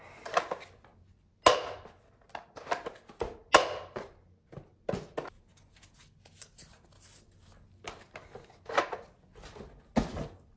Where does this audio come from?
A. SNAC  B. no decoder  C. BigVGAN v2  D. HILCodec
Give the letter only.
B